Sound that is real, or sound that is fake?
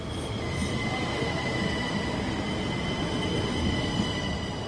real